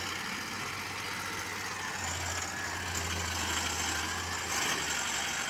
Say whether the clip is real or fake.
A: real